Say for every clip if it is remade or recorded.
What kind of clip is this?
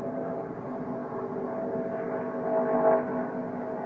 recorded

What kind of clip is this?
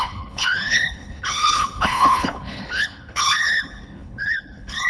remade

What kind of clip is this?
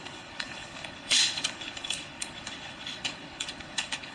remade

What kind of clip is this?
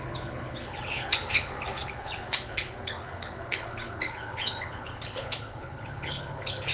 remade